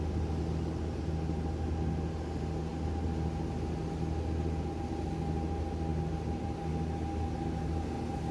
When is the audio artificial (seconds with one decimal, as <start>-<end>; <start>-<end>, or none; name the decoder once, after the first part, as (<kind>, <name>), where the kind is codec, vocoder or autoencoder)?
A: none